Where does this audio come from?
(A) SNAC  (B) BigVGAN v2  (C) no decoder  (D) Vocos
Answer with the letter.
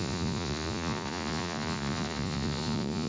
D